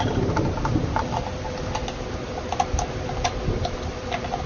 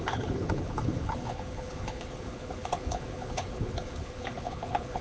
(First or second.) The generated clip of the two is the second